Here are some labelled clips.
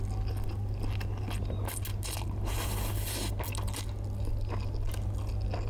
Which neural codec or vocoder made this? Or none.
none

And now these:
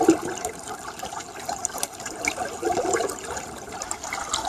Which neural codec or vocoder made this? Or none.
vocoder, BigVGAN v2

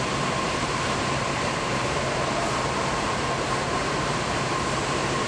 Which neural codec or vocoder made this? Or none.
vocoder, BigVGAN v2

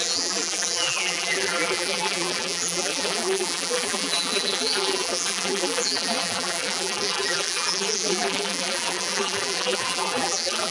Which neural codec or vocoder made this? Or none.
vocoder, BigVGAN v2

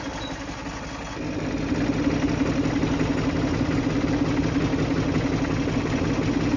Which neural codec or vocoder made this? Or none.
none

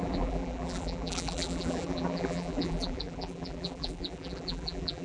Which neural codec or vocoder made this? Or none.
vocoder, BigVGAN v2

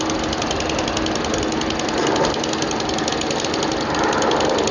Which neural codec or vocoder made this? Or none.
none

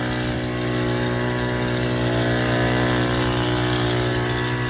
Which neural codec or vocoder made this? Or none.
none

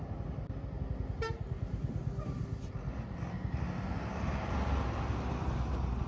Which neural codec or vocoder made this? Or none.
none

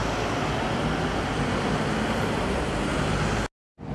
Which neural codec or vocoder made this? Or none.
none